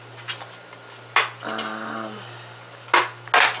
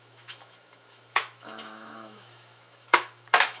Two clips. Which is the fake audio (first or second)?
second